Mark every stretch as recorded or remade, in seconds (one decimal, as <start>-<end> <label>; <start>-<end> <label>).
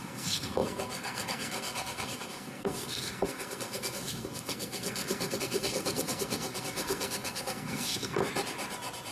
0.0-8.2 remade; 8.2-9.1 recorded